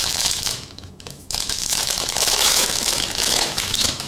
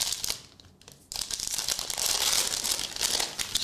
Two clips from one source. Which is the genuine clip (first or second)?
second